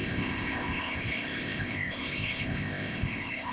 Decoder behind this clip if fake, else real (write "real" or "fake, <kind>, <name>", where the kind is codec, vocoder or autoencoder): fake, codec, ZipCodec